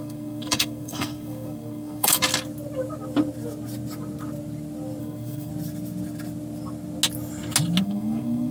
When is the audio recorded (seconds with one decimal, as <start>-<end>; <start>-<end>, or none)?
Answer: 2.2-5.0; 5.5-7.8